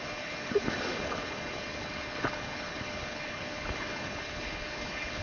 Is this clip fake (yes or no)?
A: yes